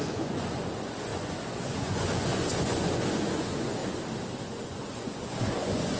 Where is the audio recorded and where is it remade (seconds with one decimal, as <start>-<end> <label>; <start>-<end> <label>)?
0.0-3.8 remade; 3.8-4.4 recorded; 4.4-6.0 remade